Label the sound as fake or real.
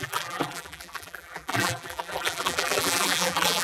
fake